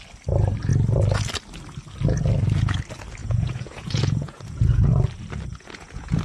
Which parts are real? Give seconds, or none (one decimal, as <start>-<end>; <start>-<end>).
0.0-3.2; 4.9-5.5